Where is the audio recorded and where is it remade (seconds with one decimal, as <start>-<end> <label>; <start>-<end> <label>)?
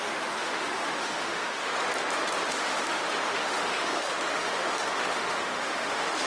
0.0-1.7 remade; 1.7-2.5 recorded; 2.5-6.3 remade